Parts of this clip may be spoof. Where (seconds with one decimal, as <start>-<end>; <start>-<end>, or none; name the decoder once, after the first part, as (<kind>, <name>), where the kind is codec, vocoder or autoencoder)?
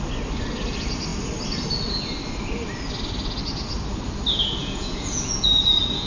4.6-6.1 (vocoder, Vocos)